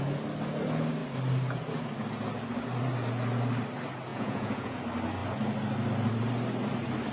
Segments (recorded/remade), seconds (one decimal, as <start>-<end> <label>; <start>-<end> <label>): 0.0-4.1 recorded; 4.1-4.8 remade; 4.8-7.1 recorded